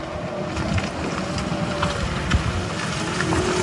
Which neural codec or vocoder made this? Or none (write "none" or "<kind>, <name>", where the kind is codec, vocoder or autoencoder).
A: none